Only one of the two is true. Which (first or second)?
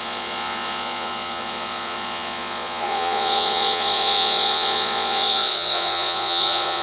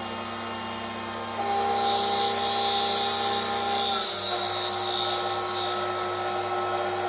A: second